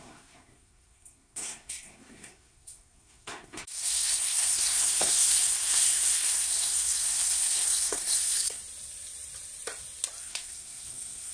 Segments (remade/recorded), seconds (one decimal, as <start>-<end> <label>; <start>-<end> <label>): 0.0-8.6 remade; 8.6-10.2 recorded; 10.2-11.3 remade